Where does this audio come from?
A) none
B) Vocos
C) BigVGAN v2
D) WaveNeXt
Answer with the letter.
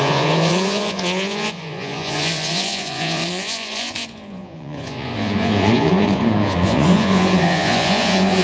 B